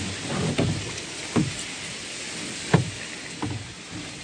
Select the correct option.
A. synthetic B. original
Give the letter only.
B